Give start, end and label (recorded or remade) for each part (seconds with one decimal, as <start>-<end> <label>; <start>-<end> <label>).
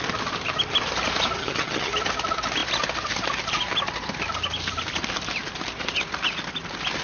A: 0.0-1.4 recorded; 1.4-1.9 remade; 1.9-7.0 recorded